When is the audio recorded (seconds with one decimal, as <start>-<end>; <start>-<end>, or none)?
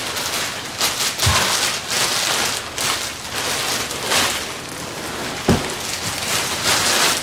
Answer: 0.0-6.2; 6.8-7.2